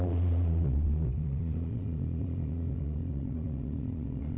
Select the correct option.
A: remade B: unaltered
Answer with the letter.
A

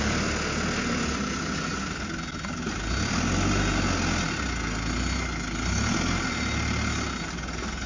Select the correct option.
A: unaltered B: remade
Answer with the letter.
A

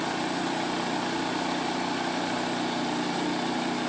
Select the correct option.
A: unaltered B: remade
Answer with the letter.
A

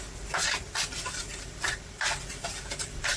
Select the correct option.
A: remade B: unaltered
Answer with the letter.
B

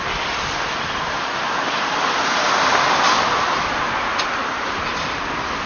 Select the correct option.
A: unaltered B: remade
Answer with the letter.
A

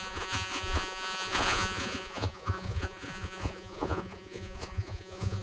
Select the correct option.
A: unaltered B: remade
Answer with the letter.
B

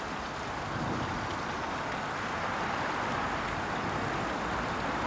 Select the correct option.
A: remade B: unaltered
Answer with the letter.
B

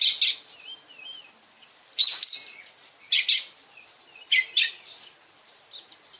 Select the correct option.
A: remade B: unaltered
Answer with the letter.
B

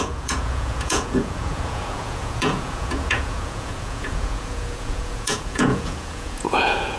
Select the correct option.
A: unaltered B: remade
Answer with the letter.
B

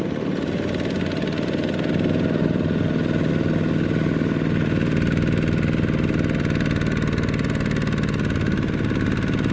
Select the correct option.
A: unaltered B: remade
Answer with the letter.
A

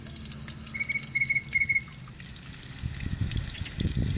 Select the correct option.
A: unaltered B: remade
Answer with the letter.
A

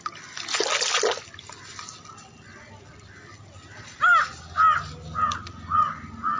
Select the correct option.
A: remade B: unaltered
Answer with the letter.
B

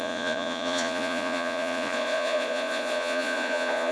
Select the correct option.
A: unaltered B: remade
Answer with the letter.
B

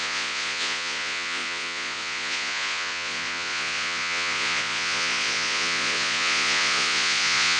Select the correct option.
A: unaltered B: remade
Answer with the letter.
B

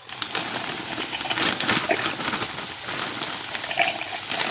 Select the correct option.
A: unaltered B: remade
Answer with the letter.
A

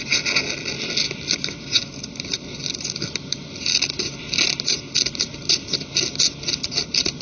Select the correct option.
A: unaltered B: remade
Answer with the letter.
A